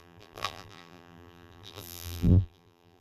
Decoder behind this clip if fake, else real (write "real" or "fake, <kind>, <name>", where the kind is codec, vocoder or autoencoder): fake, vocoder, BigVGAN v2